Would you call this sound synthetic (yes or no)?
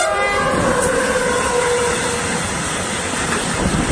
yes